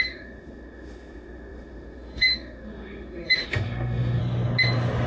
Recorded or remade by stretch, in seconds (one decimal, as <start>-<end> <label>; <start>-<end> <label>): 0.0-4.2 remade; 4.2-5.1 recorded